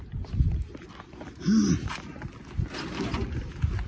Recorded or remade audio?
recorded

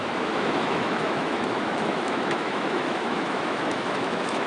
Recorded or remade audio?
remade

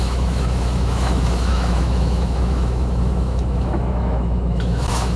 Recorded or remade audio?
remade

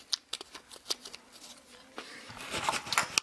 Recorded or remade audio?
recorded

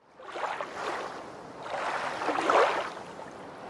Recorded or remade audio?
recorded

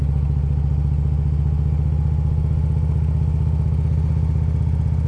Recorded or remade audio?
recorded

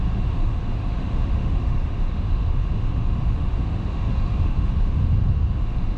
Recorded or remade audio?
remade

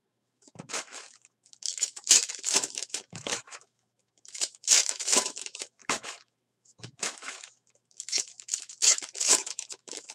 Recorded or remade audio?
remade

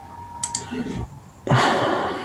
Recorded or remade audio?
recorded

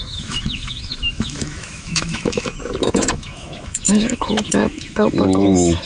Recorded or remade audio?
remade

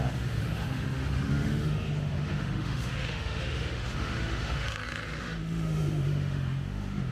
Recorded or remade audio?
remade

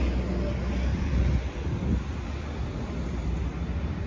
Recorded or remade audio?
recorded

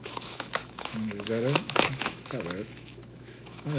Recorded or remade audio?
remade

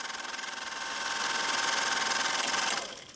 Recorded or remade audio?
recorded